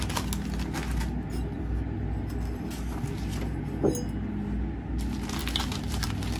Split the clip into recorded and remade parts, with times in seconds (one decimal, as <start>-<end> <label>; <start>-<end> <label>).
0.0-5.4 recorded; 5.4-6.4 remade